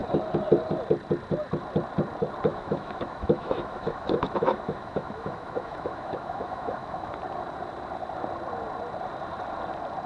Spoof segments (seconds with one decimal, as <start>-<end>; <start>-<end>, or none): 2.5-7.1